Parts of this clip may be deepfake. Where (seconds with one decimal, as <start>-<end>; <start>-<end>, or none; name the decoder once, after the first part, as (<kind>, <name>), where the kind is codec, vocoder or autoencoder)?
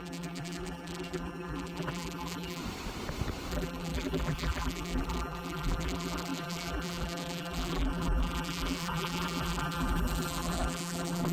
0.0-2.6 (vocoder, BigVGAN v2); 3.5-11.3